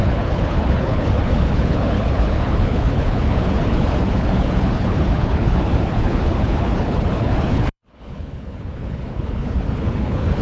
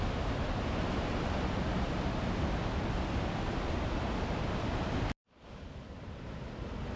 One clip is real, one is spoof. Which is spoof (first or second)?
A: first